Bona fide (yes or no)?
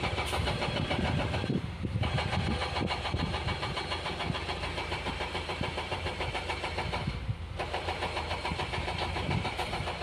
no